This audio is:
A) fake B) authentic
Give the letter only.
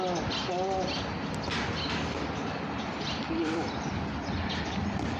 B